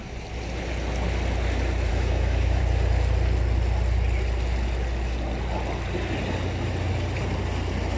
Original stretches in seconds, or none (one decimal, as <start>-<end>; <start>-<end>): 0.0-1.9; 2.6-8.0